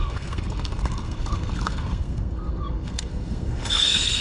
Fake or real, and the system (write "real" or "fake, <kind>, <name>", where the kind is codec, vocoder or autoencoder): fake, codec, SNAC